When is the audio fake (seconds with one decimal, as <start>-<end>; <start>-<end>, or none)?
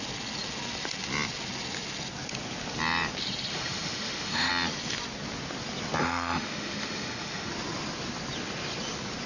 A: 3.5-4.5; 6.0-7.5